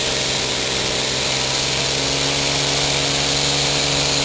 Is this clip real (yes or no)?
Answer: yes